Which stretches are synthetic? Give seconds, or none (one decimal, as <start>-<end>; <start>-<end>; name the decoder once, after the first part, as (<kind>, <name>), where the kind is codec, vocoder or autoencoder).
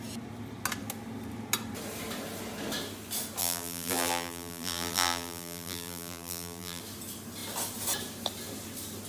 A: 3.4-6.8 (vocoder, BigVGAN v2)